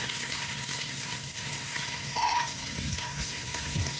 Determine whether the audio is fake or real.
fake